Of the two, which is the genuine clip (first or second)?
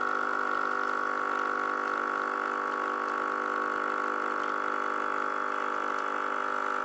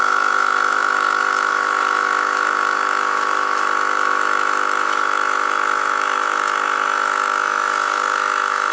first